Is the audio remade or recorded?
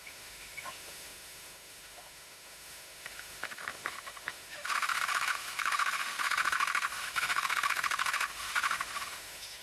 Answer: remade